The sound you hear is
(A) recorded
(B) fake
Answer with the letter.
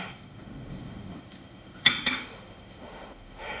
B